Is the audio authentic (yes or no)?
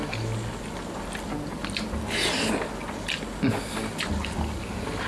yes